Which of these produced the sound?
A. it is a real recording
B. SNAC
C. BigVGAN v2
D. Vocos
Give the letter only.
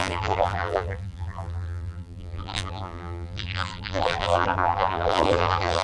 C